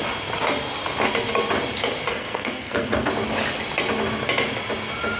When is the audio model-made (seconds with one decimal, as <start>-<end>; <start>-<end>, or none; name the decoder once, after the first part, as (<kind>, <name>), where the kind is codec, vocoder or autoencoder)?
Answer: 2.1-3.1 (codec, SNAC)